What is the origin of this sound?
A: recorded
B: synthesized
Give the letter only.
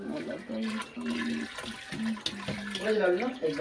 A